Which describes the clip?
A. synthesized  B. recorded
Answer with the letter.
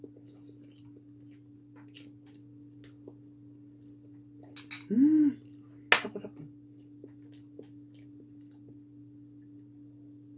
B